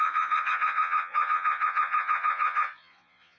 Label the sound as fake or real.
fake